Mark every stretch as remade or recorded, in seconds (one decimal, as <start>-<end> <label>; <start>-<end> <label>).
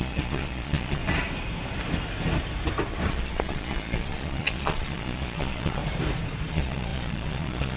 0.0-1.0 remade; 1.0-3.1 recorded; 3.1-5.8 remade; 5.8-6.5 recorded; 6.5-7.8 remade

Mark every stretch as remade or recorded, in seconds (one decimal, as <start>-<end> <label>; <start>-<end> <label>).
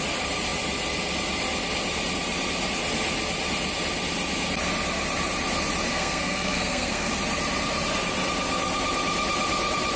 0.0-5.9 recorded; 5.9-7.1 remade; 7.1-10.0 recorded